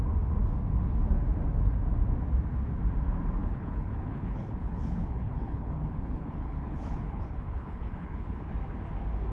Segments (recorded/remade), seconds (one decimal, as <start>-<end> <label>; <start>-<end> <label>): 0.0-3.4 recorded; 3.4-8.5 remade; 8.5-9.3 recorded